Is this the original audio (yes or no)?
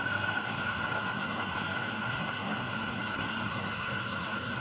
no